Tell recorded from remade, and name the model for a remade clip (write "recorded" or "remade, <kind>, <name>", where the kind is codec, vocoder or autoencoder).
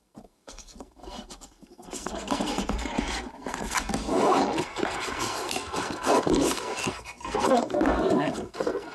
remade, codec, SNAC